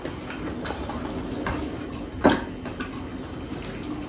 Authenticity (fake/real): real